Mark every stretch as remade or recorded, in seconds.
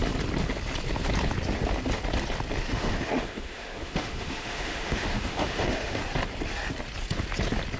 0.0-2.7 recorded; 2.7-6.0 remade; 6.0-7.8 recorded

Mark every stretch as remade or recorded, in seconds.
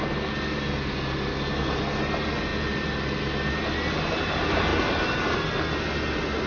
0.0-4.7 recorded; 4.7-5.3 remade; 5.3-6.5 recorded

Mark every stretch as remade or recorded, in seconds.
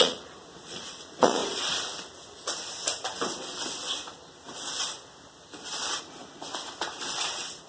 0.0-1.4 remade; 1.4-6.0 recorded; 6.0-6.5 remade; 6.5-7.7 recorded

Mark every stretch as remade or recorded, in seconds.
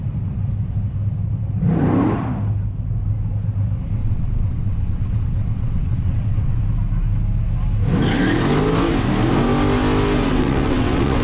0.0-4.0 recorded; 4.0-6.6 remade; 6.6-10.3 recorded; 10.3-11.2 remade